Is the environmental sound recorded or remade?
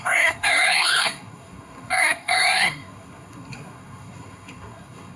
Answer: remade